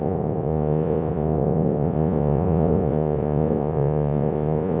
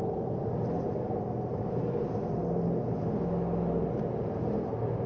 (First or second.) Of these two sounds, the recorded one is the second